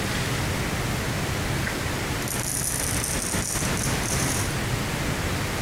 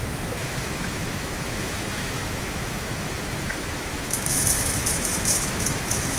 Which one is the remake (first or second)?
second